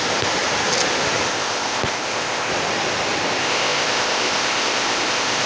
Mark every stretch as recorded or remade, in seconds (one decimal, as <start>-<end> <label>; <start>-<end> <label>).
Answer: 0.0-1.3 recorded; 1.3-2.5 remade; 2.5-3.4 recorded; 3.4-5.5 remade

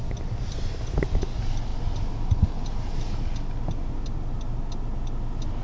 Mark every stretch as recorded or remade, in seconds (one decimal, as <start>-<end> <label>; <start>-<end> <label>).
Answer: 0.0-5.6 recorded

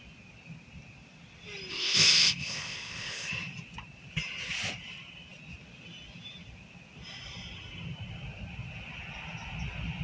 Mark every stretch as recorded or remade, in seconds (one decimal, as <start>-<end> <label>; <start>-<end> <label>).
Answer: 0.0-1.7 recorded; 1.7-3.3 remade; 3.3-10.0 recorded

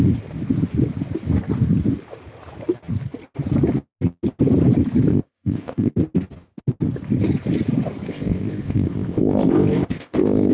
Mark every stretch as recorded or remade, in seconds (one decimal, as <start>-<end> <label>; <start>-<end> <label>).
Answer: 0.0-5.1 recorded; 5.1-5.9 remade; 5.9-8.1 recorded; 8.1-10.5 remade